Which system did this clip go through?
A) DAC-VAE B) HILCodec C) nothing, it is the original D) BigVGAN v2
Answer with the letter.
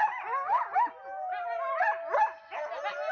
C